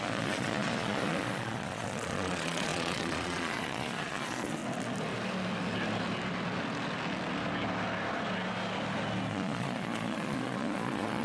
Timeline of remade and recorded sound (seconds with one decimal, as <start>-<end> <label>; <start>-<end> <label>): 0.0-4.6 remade; 4.6-9.3 recorded; 9.3-11.2 remade